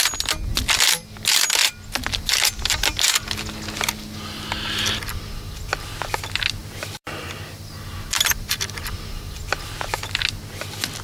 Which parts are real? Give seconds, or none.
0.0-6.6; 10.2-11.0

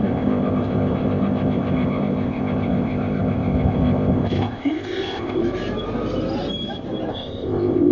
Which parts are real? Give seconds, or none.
5.4-7.1

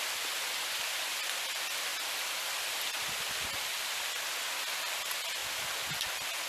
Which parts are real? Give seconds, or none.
0.0-6.5

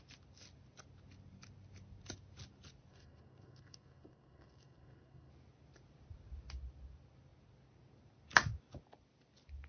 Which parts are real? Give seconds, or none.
0.0-2.9; 5.3-9.7

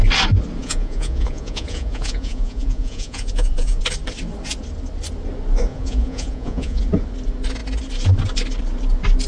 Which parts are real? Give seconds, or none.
0.0-0.6; 3.8-5.7; 6.8-9.3